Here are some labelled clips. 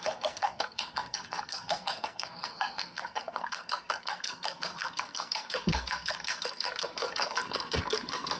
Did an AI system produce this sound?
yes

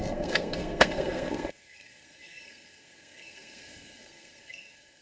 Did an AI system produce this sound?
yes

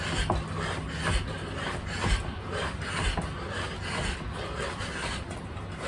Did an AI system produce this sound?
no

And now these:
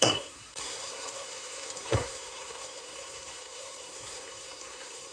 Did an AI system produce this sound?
yes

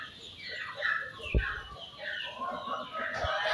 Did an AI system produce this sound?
no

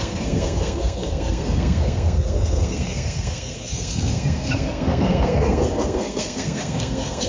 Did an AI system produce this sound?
yes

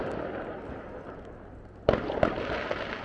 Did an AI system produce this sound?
no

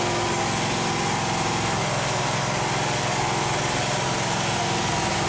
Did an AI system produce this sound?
no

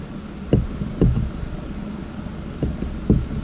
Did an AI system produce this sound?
no